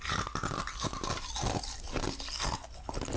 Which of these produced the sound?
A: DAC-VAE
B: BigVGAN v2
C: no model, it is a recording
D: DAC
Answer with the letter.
C